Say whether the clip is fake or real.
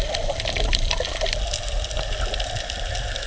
real